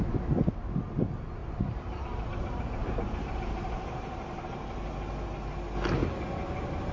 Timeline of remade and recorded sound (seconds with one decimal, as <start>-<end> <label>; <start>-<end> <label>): 0.0-1.4 recorded; 1.4-4.4 remade; 4.4-6.0 recorded; 6.0-6.9 remade